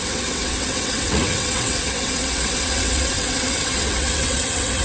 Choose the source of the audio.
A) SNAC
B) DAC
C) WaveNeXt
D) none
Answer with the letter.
C